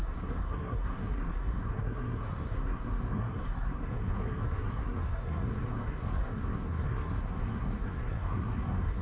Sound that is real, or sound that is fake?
fake